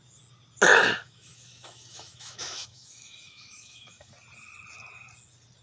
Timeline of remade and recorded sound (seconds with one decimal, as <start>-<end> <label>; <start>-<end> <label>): 0.0-0.7 recorded; 0.7-4.1 remade; 4.1-5.6 recorded